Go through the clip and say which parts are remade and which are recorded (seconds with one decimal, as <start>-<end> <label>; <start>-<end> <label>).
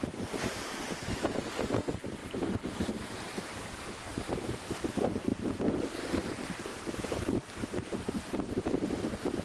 0.0-3.5 recorded; 3.5-4.3 remade; 4.3-9.4 recorded